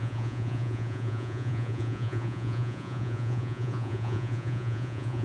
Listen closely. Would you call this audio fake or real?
fake